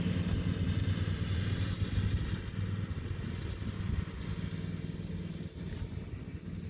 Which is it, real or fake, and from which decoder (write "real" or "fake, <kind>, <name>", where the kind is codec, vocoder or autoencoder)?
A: real